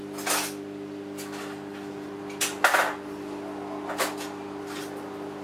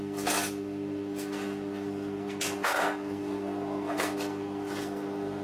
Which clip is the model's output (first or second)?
second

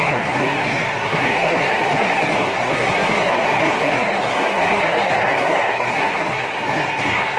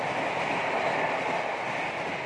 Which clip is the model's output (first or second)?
first